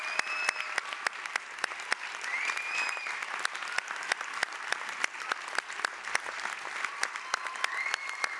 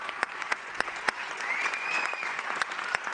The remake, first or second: second